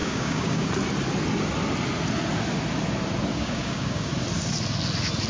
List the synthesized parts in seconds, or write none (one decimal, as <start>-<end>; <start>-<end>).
0.0-0.7; 3.3-4.1